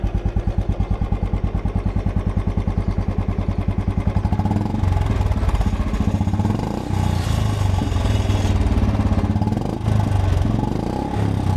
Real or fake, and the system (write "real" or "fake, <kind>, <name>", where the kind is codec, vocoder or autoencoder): real